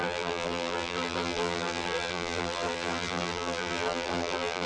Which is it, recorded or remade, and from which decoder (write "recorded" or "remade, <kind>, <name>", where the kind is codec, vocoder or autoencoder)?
remade, vocoder, BigVGAN v2